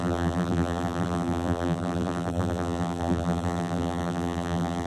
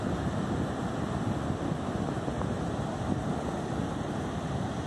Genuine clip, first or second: second